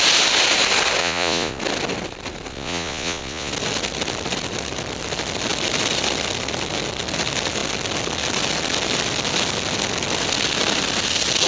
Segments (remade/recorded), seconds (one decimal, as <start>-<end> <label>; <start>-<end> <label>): 0.0-1.0 recorded; 1.0-1.6 remade; 1.6-2.5 recorded; 2.5-3.5 remade; 3.5-11.5 recorded